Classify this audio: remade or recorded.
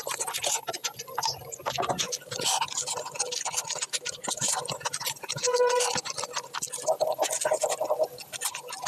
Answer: recorded